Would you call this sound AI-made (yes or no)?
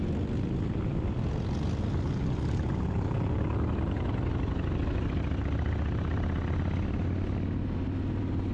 no